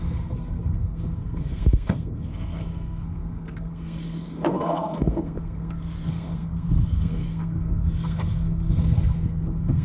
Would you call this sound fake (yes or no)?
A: yes